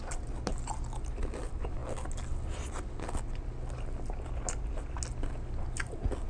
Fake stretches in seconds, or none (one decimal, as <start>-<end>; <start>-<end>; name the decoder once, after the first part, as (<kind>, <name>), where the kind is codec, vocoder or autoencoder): none